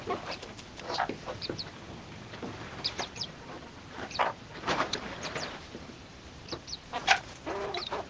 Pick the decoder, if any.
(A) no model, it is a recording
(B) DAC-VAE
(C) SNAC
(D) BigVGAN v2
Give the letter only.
D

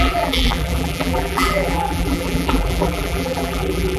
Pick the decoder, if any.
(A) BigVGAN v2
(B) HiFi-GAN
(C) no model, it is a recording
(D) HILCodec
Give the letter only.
A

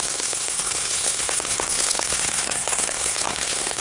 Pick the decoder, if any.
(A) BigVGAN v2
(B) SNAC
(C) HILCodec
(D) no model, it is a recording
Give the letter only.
B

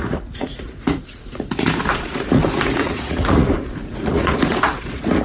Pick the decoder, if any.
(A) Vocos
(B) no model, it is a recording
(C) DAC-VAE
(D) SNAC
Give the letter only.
A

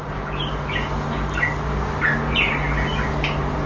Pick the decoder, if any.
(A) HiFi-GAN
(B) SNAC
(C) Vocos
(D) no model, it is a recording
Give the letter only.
D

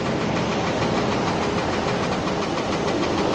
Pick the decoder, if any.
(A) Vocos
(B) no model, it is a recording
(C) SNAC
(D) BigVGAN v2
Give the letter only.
B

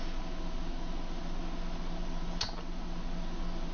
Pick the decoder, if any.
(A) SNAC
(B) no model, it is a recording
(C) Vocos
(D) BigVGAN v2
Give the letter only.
B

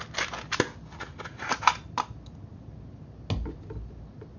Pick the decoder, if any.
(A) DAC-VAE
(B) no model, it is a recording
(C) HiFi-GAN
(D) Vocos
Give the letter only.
B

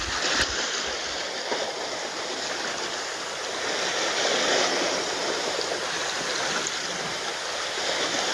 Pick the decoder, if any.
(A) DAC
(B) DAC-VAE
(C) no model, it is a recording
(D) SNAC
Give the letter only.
C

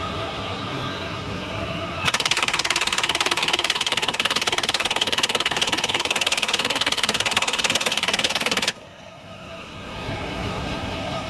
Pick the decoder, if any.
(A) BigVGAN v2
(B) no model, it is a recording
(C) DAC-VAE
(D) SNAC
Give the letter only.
D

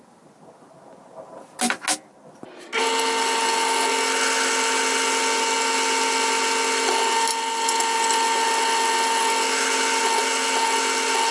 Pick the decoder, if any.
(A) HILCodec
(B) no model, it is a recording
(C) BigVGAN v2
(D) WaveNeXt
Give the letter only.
B